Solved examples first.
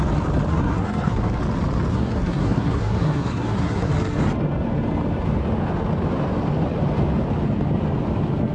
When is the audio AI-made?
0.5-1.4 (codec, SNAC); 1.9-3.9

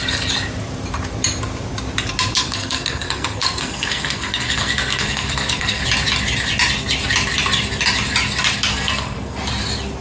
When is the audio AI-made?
2.4-5.8 (codec, SNAC); 8.7-9.4